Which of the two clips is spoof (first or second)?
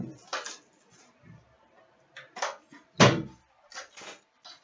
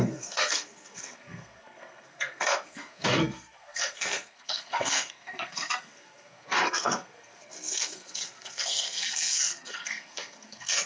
second